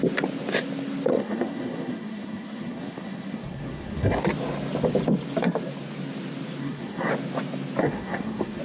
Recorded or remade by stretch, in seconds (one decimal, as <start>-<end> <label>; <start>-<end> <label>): 0.0-1.1 recorded; 1.1-4.2 remade; 4.2-6.6 recorded; 6.6-7.1 remade; 7.1-7.8 recorded; 7.8-8.6 remade